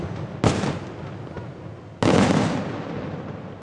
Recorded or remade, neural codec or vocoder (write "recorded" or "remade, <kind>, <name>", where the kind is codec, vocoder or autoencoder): recorded